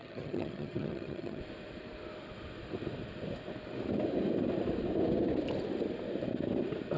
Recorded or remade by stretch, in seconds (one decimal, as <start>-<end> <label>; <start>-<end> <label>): 0.0-1.4 remade; 1.4-7.0 recorded